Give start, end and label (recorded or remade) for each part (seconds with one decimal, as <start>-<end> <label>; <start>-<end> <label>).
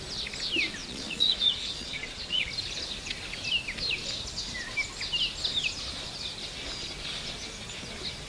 0.0-0.8 recorded; 0.8-2.5 remade; 2.5-8.3 recorded